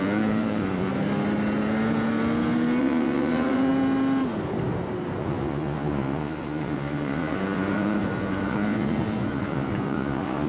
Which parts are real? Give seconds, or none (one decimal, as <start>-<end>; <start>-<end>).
0.9-2.8; 3.7-5.2